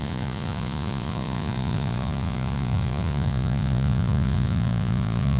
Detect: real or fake fake